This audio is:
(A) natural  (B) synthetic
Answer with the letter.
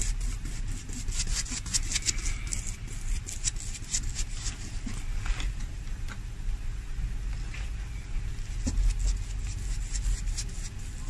A